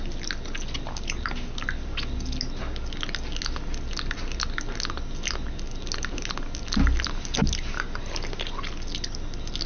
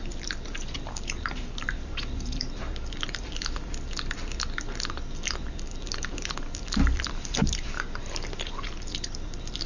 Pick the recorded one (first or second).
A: first